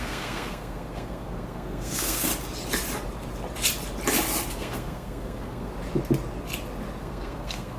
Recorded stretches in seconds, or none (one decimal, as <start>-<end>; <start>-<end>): 2.3-4.5; 5.7-7.0